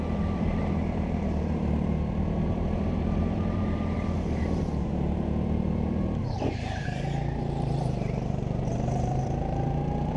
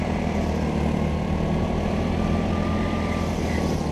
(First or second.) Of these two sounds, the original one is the second